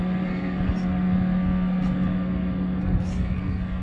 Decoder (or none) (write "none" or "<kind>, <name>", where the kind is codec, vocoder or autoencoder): codec, SNAC